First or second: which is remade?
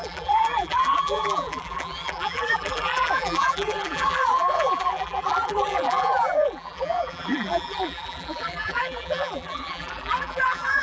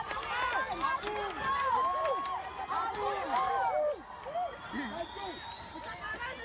first